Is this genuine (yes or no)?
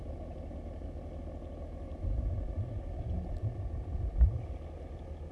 yes